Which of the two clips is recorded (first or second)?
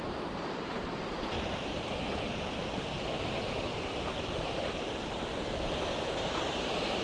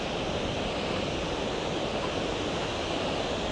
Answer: second